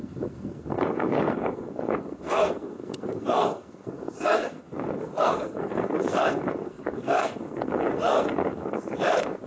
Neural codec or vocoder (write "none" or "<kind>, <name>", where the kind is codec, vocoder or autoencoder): codec, SNAC